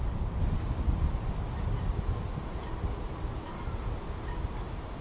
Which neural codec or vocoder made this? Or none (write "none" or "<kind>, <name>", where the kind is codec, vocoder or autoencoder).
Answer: none